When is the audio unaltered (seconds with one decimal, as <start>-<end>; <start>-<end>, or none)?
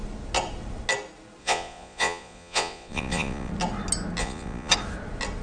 0.0-1.4; 3.5-4.2; 4.7-5.4